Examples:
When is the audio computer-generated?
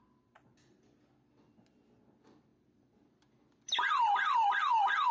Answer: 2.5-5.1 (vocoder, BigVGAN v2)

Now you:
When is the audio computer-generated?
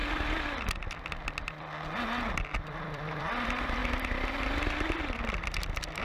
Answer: 2.6-3.8 (vocoder, BigVGAN v2); 5.0-6.0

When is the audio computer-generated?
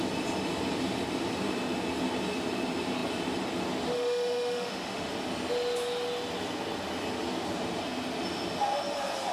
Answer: 3.9-5.1 (autoencoder, DAC-VAE)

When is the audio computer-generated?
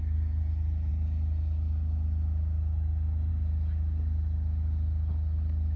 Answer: none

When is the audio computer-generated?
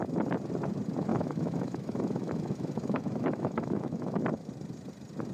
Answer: 1.1-4.2 (autoencoder, DAC-VAE)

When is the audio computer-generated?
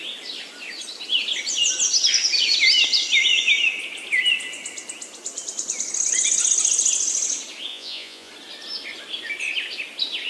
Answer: 7.7-8.3 (vocoder, Vocos)